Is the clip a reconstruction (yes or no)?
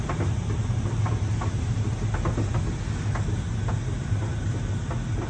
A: no